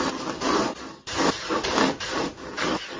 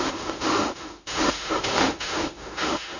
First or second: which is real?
first